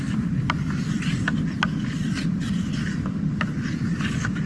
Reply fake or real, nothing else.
real